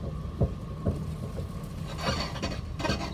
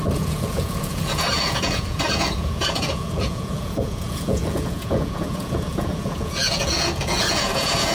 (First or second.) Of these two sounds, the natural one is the first